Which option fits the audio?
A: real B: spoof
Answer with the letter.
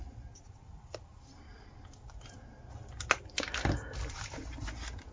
A